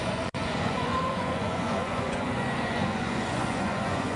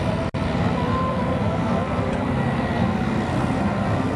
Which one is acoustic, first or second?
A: second